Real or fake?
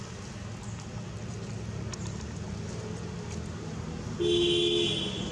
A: real